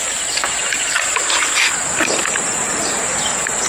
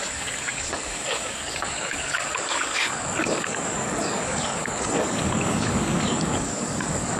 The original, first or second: first